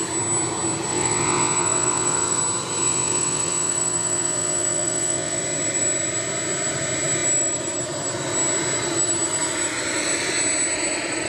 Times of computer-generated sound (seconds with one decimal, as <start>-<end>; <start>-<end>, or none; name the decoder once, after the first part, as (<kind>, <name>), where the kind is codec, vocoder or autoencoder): 0.9-2.4 (vocoder, WaveNeXt); 2.8-5.4